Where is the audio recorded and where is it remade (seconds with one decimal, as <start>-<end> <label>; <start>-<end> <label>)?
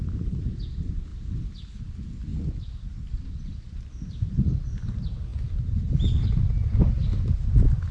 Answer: 0.0-7.9 recorded